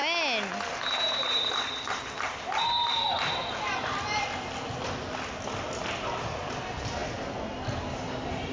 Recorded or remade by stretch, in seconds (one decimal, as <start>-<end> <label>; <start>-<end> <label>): 0.0-8.5 recorded